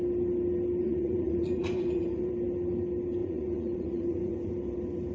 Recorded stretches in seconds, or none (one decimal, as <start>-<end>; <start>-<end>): 0.0-0.8; 2.3-3.2; 4.5-5.1